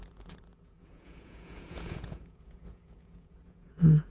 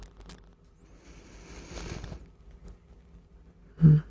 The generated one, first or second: first